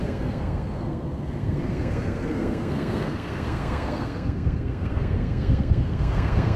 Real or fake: fake